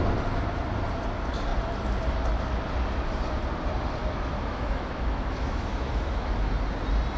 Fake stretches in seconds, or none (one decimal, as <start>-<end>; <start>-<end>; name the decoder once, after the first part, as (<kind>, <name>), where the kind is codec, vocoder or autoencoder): 4.0-6.5 (autoencoder, DAC-VAE)